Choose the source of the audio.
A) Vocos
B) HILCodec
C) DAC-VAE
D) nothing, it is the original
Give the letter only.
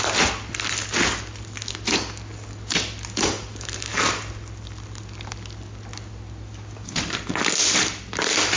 D